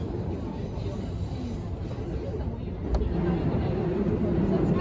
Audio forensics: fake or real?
real